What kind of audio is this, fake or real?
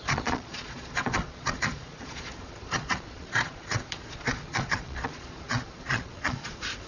fake